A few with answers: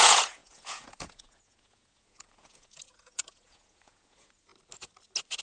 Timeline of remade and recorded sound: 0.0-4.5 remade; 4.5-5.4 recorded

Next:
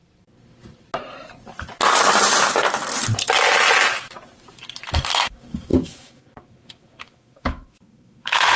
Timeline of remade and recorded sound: 0.0-4.8 recorded; 4.8-8.6 remade

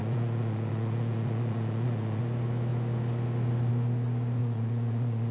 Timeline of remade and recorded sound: 0.0-2.2 remade; 2.2-4.4 recorded; 4.4-5.3 remade

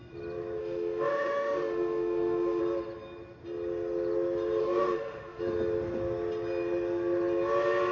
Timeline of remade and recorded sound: 0.0-0.6 recorded; 0.6-2.6 remade; 2.6-4.6 recorded; 4.6-5.4 remade; 5.4-7.9 recorded

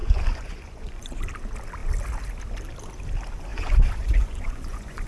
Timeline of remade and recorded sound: 0.0-1.2 remade; 1.2-3.5 recorded; 3.5-5.1 remade